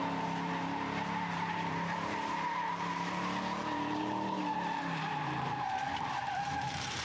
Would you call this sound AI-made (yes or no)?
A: yes